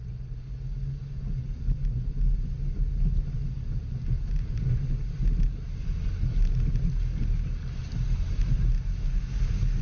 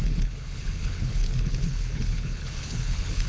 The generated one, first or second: second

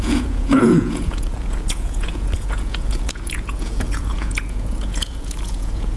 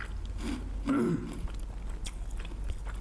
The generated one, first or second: first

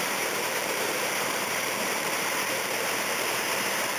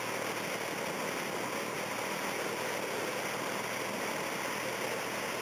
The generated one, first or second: first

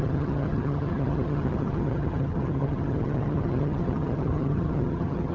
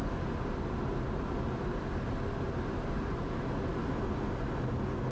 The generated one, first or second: first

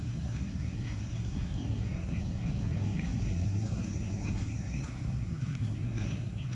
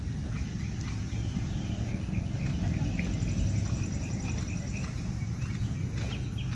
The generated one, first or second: first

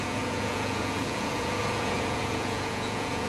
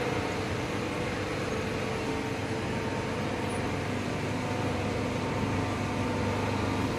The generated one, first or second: first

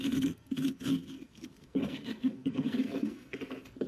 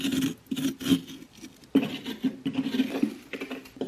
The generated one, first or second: first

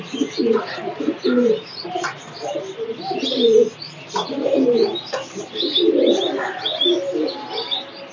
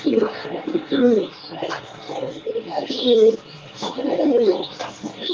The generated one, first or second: second